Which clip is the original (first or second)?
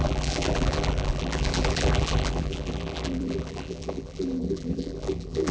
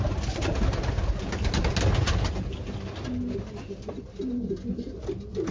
second